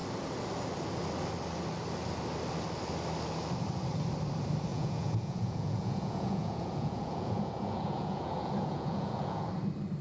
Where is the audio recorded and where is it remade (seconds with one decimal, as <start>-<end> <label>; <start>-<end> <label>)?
0.0-4.7 recorded; 4.7-9.5 remade; 9.5-10.0 recorded